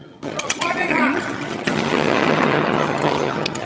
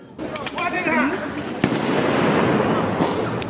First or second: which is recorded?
second